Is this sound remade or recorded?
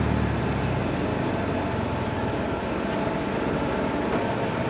recorded